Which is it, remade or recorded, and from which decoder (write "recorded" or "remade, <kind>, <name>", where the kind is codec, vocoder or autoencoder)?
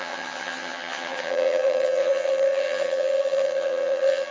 remade, vocoder, HiFi-GAN